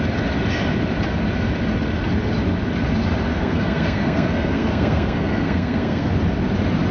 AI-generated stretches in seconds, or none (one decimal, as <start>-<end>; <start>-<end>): 3.3-6.1